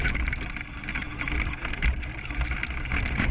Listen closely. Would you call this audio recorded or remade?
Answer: recorded